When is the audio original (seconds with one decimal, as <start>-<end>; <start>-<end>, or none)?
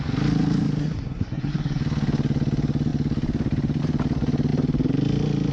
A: 0.0-0.8; 1.8-5.5